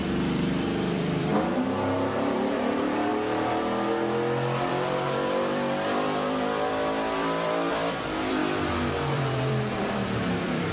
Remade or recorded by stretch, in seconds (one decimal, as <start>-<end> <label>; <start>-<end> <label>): 0.0-1.3 remade; 1.3-2.1 recorded; 2.1-3.1 remade; 3.1-4.7 recorded; 4.7-10.7 remade